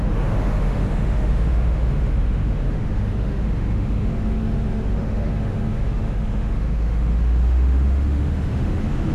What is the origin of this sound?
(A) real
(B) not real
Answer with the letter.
B